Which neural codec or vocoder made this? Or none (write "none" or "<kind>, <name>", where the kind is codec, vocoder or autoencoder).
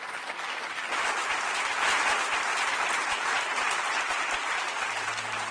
none